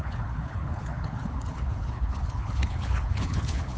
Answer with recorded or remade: remade